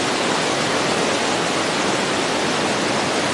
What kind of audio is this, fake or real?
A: real